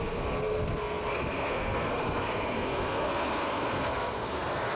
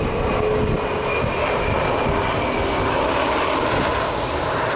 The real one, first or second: second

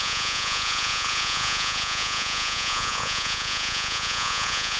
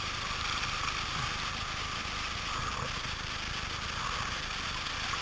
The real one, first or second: second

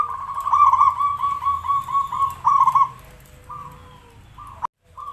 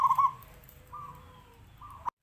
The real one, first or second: first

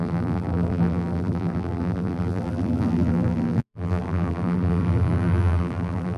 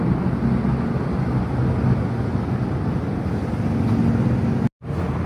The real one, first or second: second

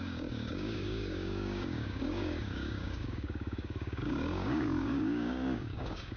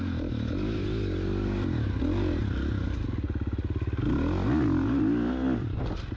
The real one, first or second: second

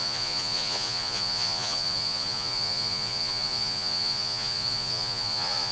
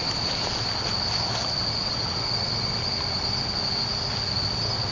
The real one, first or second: second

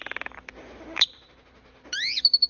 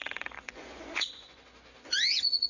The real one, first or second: first